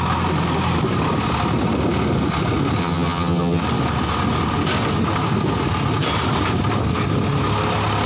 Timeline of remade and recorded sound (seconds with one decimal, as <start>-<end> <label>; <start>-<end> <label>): 0.0-2.8 recorded; 2.8-3.6 remade; 3.6-8.1 recorded